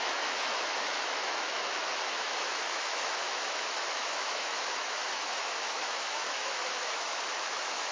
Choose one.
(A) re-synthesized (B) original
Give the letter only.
A